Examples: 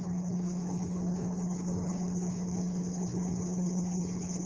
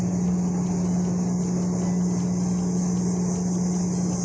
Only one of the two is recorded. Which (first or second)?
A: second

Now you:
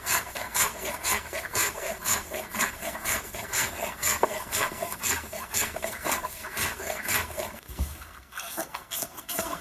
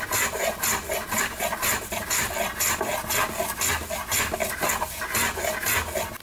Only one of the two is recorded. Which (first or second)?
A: second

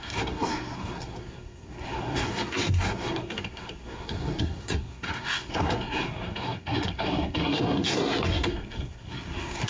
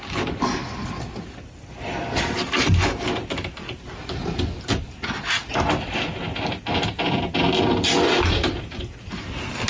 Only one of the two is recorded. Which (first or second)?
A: second